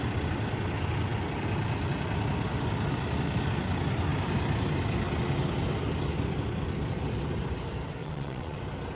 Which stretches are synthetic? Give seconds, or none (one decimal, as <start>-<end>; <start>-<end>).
8.0-8.6